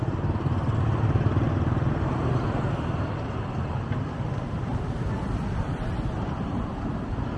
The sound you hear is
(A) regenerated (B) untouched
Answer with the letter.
B